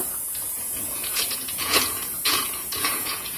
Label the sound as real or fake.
fake